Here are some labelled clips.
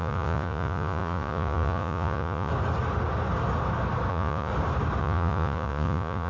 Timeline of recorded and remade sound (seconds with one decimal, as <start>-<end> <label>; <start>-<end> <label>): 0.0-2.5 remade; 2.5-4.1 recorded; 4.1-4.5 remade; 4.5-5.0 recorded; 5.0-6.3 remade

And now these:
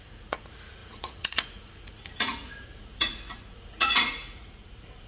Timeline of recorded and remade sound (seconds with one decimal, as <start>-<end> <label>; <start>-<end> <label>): 0.0-5.1 remade

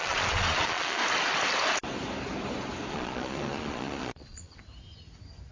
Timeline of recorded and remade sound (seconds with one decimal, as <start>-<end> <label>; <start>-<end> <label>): 0.0-1.0 remade; 1.0-2.9 recorded; 2.9-4.6 remade; 4.6-5.5 recorded

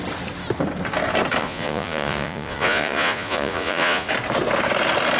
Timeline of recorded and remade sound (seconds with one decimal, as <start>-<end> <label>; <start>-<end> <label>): 0.0-1.4 recorded; 1.4-4.1 remade; 4.1-5.2 recorded